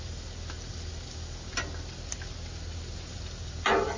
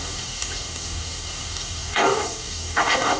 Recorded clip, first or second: first